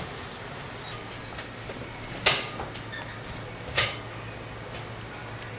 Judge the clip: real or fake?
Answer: real